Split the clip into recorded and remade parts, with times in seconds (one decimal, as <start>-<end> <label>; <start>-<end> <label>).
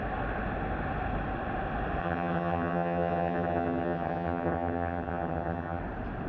0.0-2.0 recorded; 2.0-5.8 remade; 5.8-6.3 recorded